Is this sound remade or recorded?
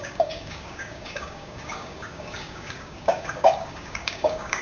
remade